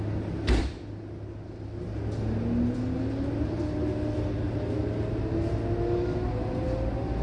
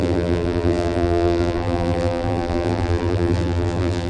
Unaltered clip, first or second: first